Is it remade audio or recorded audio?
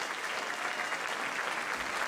recorded